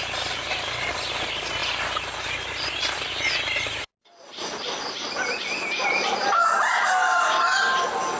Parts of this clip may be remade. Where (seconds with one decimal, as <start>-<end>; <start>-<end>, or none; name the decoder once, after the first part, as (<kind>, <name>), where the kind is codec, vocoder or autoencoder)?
none